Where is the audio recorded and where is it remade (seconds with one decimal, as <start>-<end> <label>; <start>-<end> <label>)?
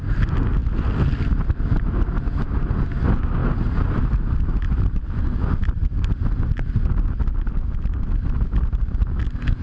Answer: 0.0-9.6 recorded